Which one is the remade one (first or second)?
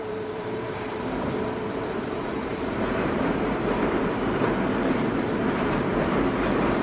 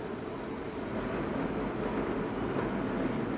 first